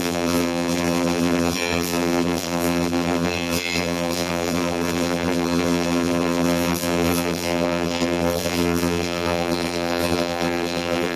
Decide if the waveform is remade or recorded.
remade